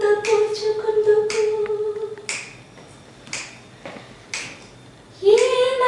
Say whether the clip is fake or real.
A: real